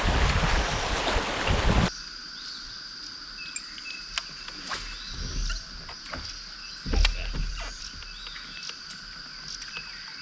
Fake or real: real